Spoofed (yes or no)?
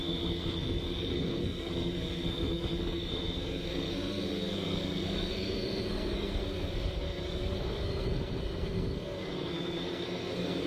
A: yes